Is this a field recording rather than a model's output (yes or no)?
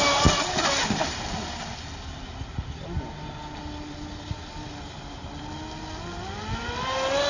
yes